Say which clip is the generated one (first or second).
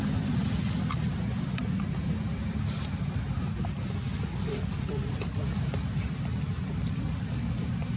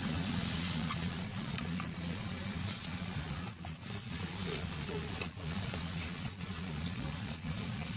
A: second